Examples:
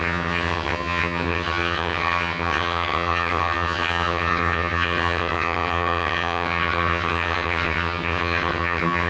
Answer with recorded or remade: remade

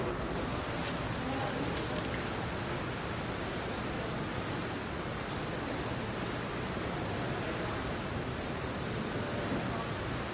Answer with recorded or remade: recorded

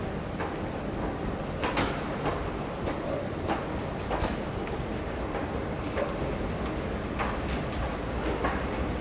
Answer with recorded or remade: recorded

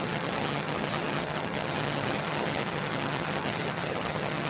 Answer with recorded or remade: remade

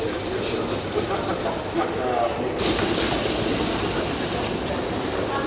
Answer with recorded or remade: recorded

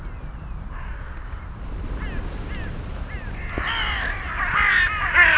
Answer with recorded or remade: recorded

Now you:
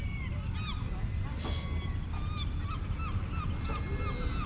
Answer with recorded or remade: recorded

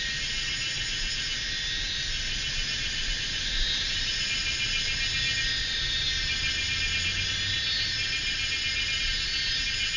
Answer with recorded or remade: recorded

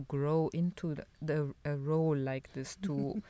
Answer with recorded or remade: recorded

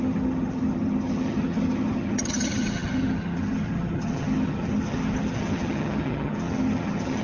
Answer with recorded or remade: remade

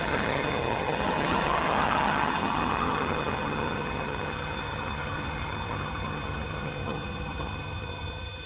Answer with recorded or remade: remade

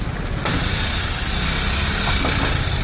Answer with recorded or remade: recorded